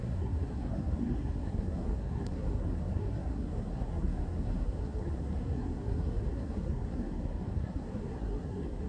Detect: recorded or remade remade